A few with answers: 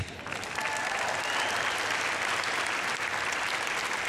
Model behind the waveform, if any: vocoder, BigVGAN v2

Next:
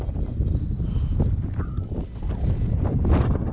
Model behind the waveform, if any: none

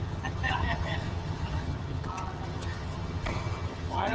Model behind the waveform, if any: vocoder, HiFi-GAN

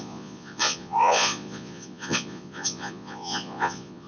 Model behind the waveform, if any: vocoder, Vocos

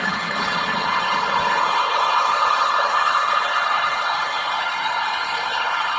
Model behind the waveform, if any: codec, HILCodec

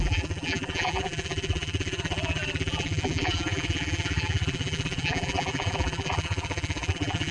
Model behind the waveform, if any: vocoder, BigVGAN v2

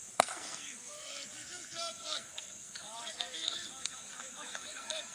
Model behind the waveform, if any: codec, SNAC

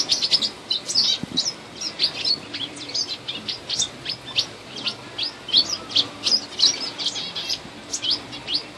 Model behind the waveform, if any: none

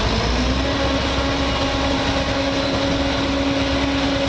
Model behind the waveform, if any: none